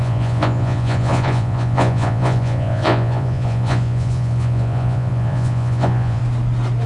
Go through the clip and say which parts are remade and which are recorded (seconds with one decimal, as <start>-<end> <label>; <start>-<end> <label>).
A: 0.0-6.2 remade; 6.2-6.9 recorded